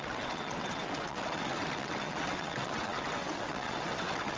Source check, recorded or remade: remade